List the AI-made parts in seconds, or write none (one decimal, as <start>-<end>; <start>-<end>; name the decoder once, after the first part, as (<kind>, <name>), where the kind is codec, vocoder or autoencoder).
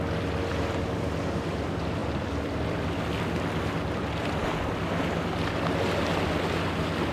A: 0.5-1.1 (vocoder, BigVGAN v2)